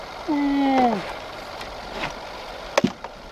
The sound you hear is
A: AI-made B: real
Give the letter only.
B